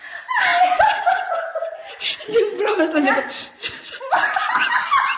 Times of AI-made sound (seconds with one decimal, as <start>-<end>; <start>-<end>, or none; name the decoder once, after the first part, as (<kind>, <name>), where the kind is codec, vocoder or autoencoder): none